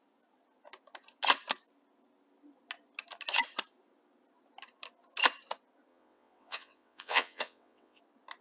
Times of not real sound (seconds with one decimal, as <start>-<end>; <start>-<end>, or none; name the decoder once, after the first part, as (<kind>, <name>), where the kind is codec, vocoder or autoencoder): 5.9-8.0 (vocoder, WaveNeXt)